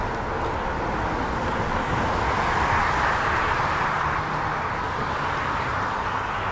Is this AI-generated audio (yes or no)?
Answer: no